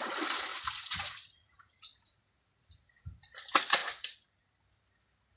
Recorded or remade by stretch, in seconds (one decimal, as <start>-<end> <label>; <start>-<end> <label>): 0.0-0.5 recorded; 0.5-1.8 remade; 1.8-5.4 recorded